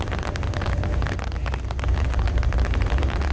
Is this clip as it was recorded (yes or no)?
yes